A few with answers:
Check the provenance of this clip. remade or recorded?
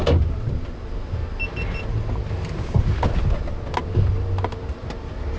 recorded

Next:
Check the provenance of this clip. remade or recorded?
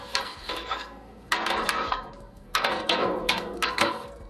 remade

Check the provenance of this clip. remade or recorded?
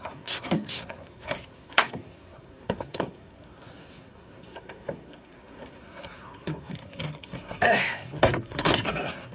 remade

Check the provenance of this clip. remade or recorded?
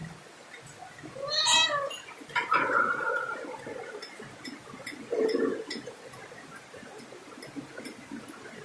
recorded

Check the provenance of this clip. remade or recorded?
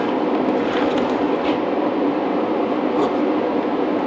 recorded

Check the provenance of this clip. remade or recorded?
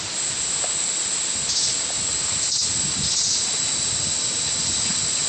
recorded